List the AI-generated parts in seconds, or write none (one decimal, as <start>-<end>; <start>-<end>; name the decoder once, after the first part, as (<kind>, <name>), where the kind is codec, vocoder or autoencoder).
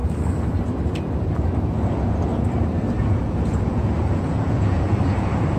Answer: 1.8-2.3 (vocoder, Vocos); 3.0-5.6